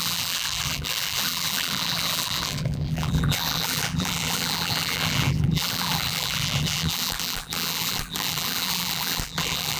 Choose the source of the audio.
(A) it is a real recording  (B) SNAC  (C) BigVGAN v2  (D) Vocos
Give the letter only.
C